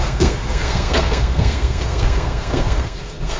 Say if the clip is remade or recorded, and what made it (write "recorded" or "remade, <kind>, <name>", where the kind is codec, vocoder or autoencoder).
remade, codec, SNAC